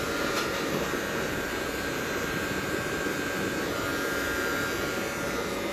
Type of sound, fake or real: fake